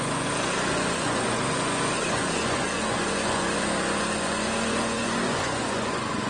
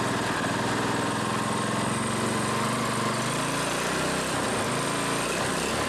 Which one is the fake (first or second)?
first